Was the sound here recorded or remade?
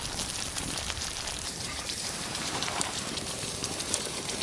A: remade